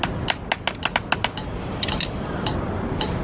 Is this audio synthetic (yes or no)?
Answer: no